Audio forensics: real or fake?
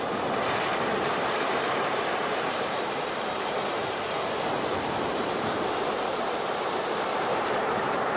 fake